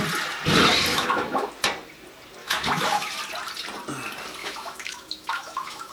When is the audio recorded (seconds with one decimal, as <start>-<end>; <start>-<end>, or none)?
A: 0.0-0.9; 1.5-2.4; 3.1-4.4